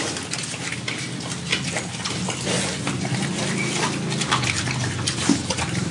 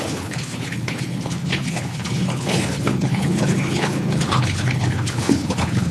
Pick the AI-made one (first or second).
second